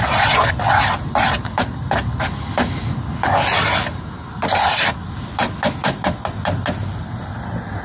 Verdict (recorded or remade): recorded